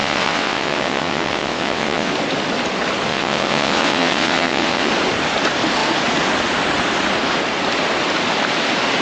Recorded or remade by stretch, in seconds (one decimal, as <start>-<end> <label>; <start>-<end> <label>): 0.0-2.1 remade; 2.1-3.1 recorded; 3.1-4.9 remade; 4.9-9.0 recorded